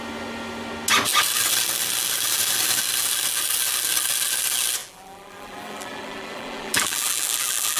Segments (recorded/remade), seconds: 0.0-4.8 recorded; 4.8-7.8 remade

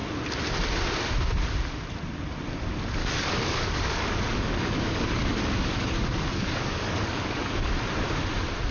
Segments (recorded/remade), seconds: 0.0-3.0 recorded; 3.0-7.7 remade; 7.7-8.7 recorded

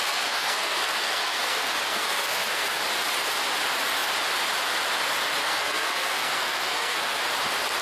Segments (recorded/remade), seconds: 0.0-2.8 remade; 2.8-5.4 recorded; 5.4-7.2 remade; 7.2-7.8 recorded

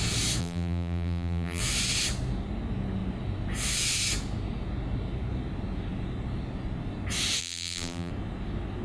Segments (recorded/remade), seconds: 0.0-0.4 recorded; 0.4-1.6 remade; 1.6-7.4 recorded; 7.4-8.1 remade; 8.1-8.8 recorded

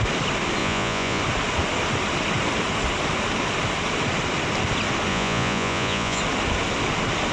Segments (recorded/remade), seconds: 0.0-0.6 recorded; 0.6-1.2 remade; 1.2-5.1 recorded; 5.1-6.2 remade; 6.2-7.3 recorded

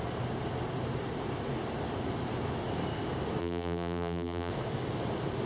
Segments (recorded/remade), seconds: 0.0-3.4 recorded; 3.4-4.5 remade; 4.5-5.5 recorded

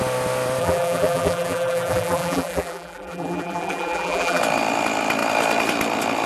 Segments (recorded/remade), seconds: 0.0-0.6 recorded; 0.6-4.4 remade; 4.4-6.3 recorded